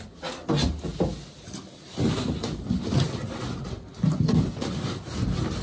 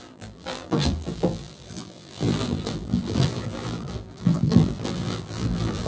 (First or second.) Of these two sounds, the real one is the first